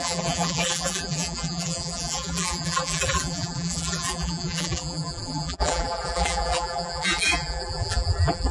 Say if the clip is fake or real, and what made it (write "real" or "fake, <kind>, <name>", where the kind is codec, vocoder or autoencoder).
fake, vocoder, BigVGAN v2